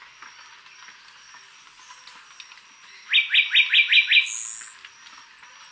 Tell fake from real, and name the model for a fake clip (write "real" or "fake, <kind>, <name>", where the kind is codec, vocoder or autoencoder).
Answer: real